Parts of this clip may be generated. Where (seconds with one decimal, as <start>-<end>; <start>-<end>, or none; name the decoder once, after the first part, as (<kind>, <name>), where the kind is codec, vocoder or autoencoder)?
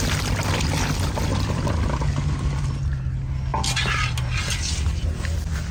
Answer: 1.3-2.6 (vocoder, BigVGAN v2)